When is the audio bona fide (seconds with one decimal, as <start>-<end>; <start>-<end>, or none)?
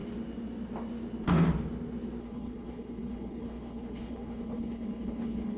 0.0-2.2